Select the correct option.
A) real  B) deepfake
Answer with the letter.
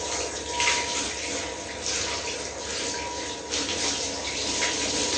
A